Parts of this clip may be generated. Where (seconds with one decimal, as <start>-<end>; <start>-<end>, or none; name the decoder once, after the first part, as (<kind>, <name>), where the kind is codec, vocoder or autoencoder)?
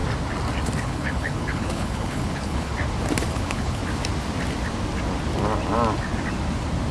0.8-2.7 (codec, HILCodec); 3.3-3.8